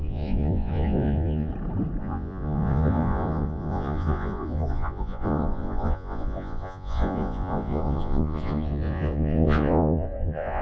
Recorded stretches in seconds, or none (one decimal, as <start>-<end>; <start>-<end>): 1.5-2.0